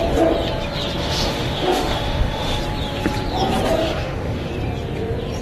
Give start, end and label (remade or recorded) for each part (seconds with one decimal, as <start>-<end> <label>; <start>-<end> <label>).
0.0-1.0 recorded; 1.0-2.6 remade; 2.6-3.8 recorded; 3.8-4.5 remade; 4.5-5.4 recorded